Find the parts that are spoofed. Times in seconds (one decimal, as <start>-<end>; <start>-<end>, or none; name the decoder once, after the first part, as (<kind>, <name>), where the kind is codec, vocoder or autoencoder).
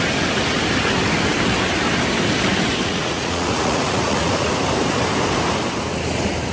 2.8-4.5 (vocoder, Vocos)